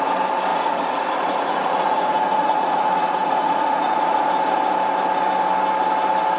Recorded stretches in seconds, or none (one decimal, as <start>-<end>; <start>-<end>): 0.0-0.5; 4.3-6.4